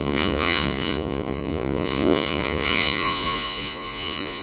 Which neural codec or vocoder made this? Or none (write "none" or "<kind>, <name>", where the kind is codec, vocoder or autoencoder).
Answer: vocoder, Vocos